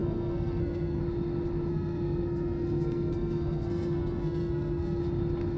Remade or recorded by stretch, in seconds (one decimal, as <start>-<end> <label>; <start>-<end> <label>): 0.0-1.0 remade; 1.0-1.7 recorded; 1.7-5.0 remade; 5.0-5.6 recorded